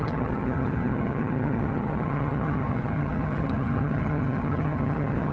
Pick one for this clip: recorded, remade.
remade